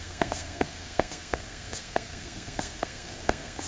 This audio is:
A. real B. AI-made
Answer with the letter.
B